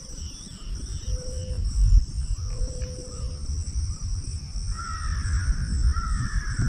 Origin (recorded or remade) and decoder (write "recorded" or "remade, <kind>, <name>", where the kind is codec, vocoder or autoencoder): recorded